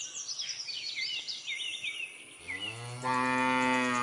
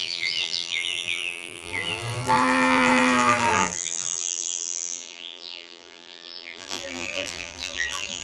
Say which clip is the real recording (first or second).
first